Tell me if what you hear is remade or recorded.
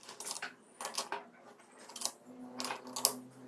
recorded